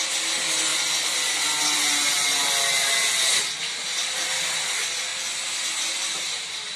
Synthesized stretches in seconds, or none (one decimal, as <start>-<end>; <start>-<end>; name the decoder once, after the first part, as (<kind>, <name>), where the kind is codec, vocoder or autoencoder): none